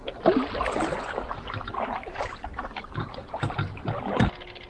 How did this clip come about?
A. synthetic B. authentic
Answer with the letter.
B